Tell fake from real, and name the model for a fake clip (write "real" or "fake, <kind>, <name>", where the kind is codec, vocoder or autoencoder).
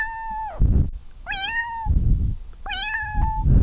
real